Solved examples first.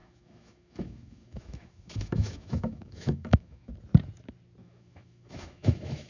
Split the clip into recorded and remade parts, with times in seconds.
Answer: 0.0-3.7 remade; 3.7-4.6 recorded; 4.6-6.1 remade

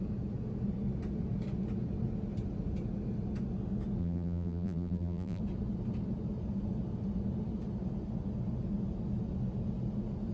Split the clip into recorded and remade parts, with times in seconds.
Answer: 0.0-4.0 recorded; 4.0-5.4 remade; 5.4-10.3 recorded

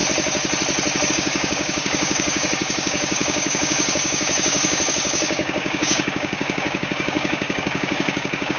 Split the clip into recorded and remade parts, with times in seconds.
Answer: 0.0-1.1 recorded; 1.1-8.6 remade

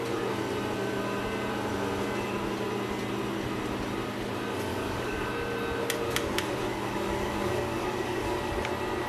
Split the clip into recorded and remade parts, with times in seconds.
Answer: 0.0-4.7 recorded; 4.7-5.3 remade; 5.3-6.7 recorded; 6.7-8.5 remade; 8.5-9.1 recorded

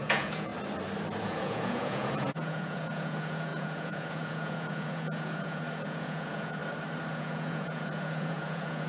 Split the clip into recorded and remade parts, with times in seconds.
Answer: 0.0-0.5 remade; 0.5-1.2 recorded; 1.2-6.6 remade; 6.6-7.1 recorded; 7.1-8.9 remade

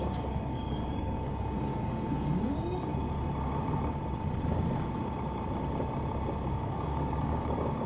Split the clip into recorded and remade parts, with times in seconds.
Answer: 0.0-2.9 remade; 2.9-6.5 recorded; 6.5-7.9 remade